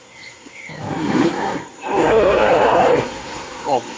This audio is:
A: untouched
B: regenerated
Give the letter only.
B